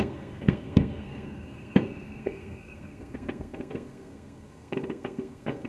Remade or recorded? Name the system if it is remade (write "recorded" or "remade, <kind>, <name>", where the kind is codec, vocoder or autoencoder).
remade, codec, SNAC